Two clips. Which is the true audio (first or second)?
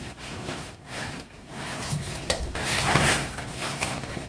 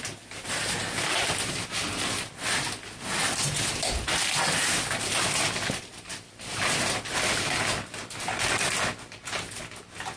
second